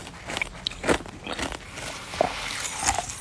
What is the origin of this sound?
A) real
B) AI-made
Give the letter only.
A